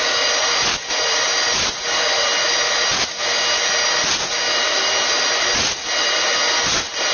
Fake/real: real